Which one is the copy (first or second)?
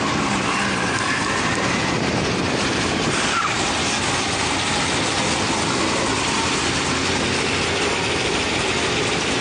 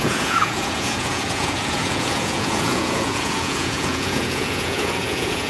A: second